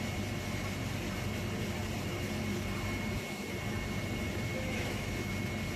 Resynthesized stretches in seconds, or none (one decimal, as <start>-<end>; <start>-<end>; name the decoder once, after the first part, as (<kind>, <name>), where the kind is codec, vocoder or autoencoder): 4.5-5.3 (autoencoder, DAC-VAE)